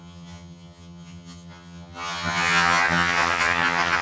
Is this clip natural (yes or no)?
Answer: no